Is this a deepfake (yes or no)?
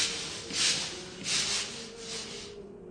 no